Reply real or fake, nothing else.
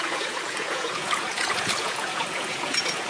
fake